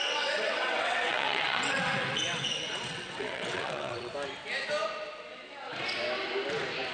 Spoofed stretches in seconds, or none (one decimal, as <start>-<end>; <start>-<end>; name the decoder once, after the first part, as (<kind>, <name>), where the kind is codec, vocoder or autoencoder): 0.0-4.1 (vocoder, WaveNeXt)